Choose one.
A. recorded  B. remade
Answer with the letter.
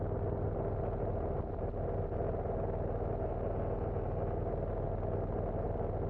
A